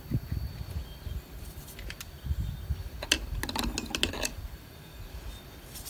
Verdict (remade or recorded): recorded